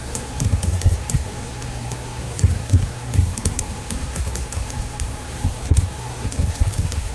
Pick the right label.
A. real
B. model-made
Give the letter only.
B